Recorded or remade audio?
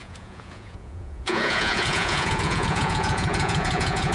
remade